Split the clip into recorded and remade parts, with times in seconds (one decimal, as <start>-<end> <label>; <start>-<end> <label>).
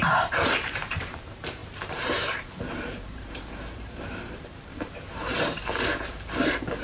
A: 0.0-6.8 remade